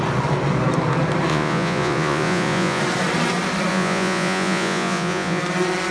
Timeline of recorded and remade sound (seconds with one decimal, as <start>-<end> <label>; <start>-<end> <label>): 0.0-1.3 recorded; 1.3-2.8 remade; 2.8-3.7 recorded; 3.7-5.4 remade; 5.4-5.9 recorded